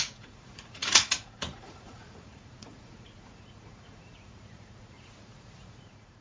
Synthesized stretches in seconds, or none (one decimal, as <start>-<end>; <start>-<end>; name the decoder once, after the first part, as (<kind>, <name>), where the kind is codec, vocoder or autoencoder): 0.0-6.2 (vocoder, Vocos)